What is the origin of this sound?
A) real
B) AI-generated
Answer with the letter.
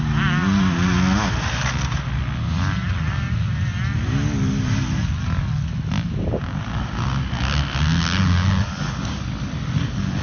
A